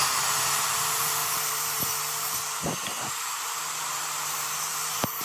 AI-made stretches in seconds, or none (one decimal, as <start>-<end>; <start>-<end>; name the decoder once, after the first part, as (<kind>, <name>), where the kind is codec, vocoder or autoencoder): 0.0-5.2 (vocoder, BigVGAN v2)